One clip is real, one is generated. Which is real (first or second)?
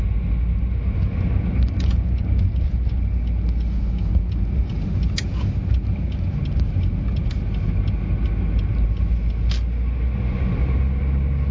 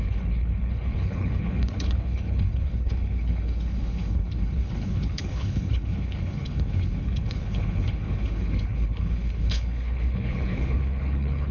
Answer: first